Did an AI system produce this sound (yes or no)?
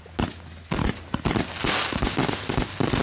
no